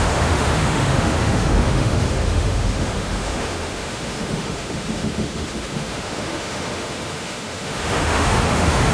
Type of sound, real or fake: fake